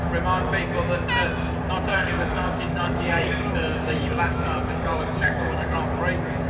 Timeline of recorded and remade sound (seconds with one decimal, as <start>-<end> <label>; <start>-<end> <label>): 0.0-1.9 recorded; 1.9-5.8 remade; 5.8-6.5 recorded